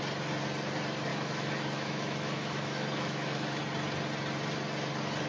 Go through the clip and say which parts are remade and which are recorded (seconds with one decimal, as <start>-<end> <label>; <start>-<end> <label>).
0.0-1.1 recorded; 1.1-3.6 remade; 3.6-5.3 recorded